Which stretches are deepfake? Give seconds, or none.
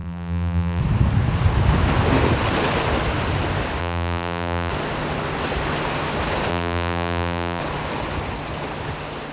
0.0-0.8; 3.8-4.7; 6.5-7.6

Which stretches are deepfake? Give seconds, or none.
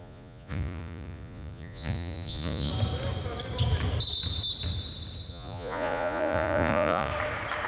0.0-2.7; 5.3-7.1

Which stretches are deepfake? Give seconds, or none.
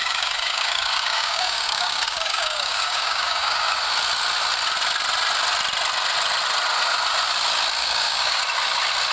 0.0-3.8; 7.8-8.4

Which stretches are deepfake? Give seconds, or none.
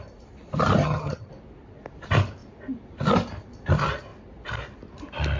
0.8-1.3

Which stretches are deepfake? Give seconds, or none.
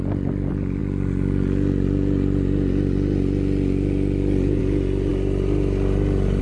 none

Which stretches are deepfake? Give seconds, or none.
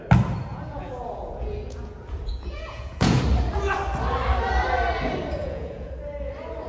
0.5-3.2; 5.4-5.9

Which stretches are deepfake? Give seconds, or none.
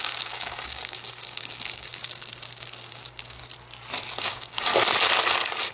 0.0-3.4; 4.2-4.7